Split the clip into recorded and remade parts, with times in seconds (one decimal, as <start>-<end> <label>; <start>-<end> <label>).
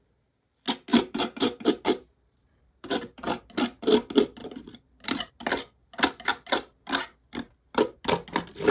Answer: 0.0-0.9 recorded; 0.9-3.4 remade; 3.4-4.4 recorded; 4.4-5.3 remade; 5.3-8.7 recorded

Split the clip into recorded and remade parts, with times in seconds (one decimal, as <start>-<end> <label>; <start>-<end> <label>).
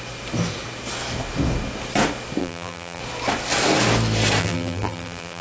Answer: 0.0-2.4 recorded; 2.4-3.0 remade; 3.0-4.4 recorded; 4.4-5.4 remade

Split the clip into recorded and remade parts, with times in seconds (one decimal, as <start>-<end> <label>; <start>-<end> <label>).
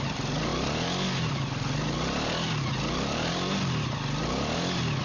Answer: 0.0-0.5 remade; 0.5-1.3 recorded; 1.3-5.0 remade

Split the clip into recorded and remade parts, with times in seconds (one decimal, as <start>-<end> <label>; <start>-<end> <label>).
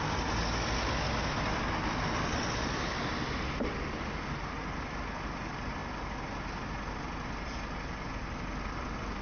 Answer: 0.0-9.2 recorded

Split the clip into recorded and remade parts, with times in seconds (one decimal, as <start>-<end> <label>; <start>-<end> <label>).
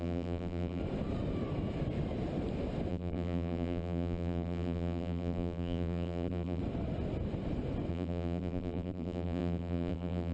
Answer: 0.0-0.8 remade; 0.8-2.9 recorded; 2.9-6.6 remade; 6.6-7.9 recorded; 7.9-10.3 remade